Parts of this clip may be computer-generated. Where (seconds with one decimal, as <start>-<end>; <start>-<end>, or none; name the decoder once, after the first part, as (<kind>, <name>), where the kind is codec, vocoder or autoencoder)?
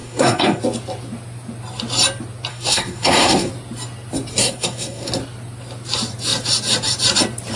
0.0-0.6 (codec, SNAC); 2.5-3.5; 4.4-5.1